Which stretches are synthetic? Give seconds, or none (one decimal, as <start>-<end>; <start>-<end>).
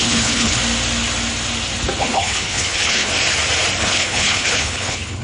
0.0-0.6; 2.0-3.1; 3.8-5.2